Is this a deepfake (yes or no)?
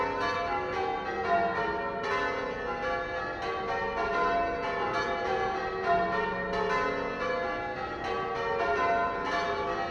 no